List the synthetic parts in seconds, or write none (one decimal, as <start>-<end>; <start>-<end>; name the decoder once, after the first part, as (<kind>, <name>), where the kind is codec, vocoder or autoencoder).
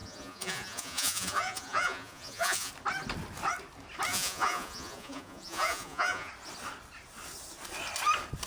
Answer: 0.0-2.7 (vocoder, Vocos); 4.1-6.3